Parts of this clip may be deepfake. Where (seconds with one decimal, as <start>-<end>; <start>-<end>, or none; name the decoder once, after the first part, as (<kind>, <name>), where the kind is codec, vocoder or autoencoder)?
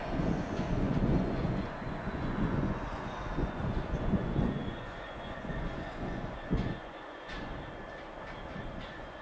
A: 0.0-7.5 (vocoder, Vocos); 8.6-9.2